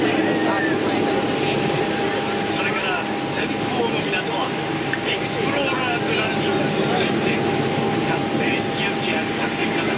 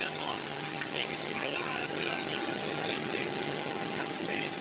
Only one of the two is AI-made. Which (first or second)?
second